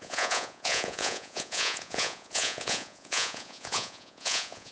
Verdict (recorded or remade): remade